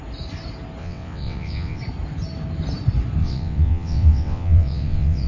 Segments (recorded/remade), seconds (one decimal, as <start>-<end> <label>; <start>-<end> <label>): 0.0-0.8 recorded; 0.8-1.8 remade; 1.8-3.2 recorded; 3.2-5.3 remade

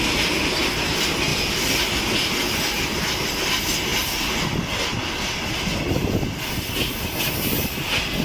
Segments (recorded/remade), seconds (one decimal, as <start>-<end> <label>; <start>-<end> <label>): 0.0-8.2 recorded

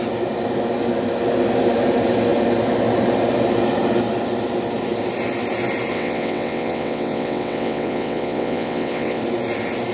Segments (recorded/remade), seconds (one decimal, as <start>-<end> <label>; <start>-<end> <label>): 0.0-5.9 recorded; 5.9-9.2 remade; 9.2-9.9 recorded

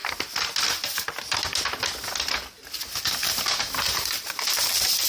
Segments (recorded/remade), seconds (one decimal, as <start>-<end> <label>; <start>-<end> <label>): 0.0-3.1 recorded; 3.1-5.1 remade

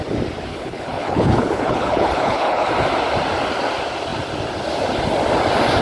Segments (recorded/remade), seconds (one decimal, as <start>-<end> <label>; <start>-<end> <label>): 0.0-0.5 recorded; 0.5-2.7 remade; 2.7-5.8 recorded